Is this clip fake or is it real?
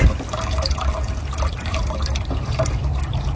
real